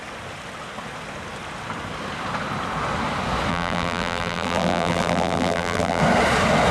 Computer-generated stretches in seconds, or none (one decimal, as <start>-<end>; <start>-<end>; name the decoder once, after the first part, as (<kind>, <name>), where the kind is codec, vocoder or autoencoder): 3.5-6.0 (vocoder, BigVGAN v2)